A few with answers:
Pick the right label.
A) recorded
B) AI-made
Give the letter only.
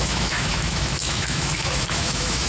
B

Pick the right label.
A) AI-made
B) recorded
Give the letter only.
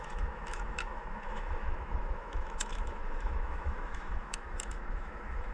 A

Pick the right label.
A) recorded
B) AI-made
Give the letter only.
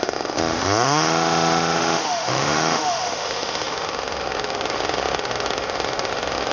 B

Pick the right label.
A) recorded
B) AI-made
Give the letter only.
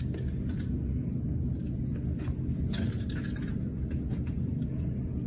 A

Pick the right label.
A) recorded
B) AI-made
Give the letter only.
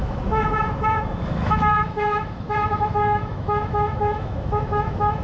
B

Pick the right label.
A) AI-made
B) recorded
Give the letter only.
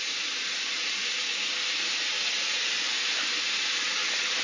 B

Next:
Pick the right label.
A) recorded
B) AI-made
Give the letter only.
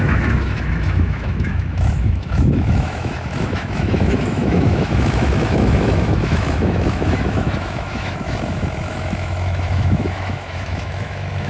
B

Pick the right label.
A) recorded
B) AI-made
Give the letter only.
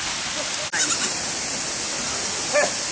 A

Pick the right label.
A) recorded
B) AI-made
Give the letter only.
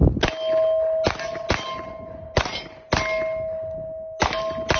A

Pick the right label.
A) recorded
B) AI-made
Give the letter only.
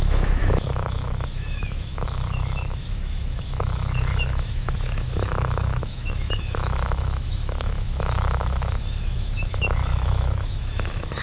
B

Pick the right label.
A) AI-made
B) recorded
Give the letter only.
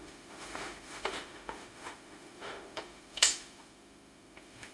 A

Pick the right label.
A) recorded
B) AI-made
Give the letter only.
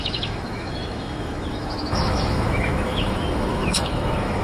B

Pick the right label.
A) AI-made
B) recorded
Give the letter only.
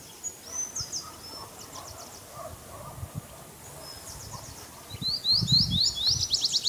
B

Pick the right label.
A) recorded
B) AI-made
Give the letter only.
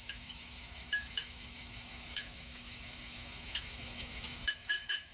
B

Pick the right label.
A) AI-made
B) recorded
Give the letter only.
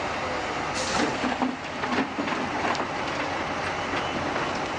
B